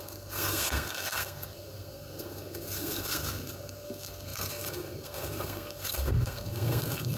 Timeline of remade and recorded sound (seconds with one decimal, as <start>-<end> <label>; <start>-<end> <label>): 0.0-7.2 remade